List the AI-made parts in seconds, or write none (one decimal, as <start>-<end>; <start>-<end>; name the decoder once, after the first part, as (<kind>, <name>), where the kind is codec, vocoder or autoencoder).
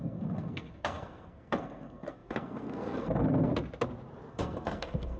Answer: 0.0-3.5 (codec, SNAC); 4.3-5.2